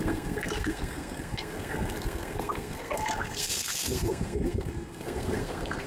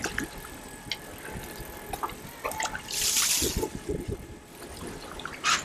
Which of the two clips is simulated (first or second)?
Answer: first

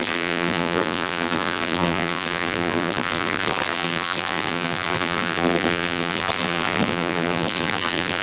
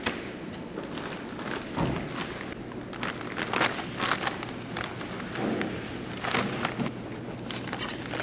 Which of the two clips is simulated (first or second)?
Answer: first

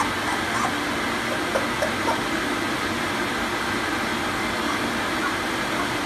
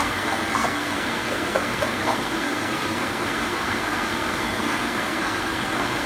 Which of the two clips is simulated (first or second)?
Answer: second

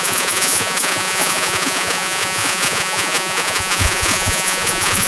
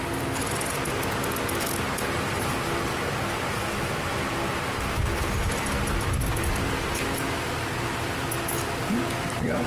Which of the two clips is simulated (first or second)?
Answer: first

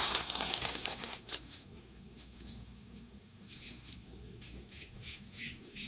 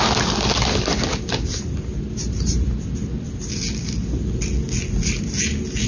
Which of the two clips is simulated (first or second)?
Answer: first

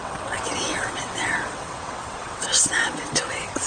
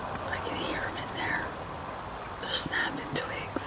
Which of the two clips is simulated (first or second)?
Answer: first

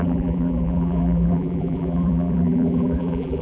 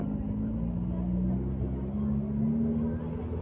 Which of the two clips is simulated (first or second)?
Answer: first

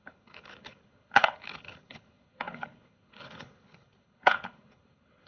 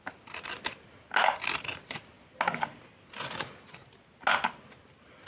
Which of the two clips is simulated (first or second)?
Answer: first